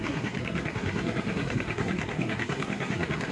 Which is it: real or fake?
fake